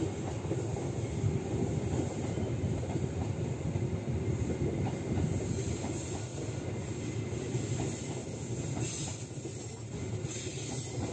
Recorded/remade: recorded